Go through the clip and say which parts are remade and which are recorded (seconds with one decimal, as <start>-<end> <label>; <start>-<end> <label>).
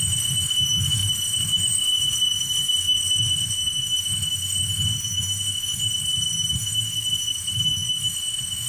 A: 0.0-6.0 remade; 6.0-6.6 recorded; 6.6-8.7 remade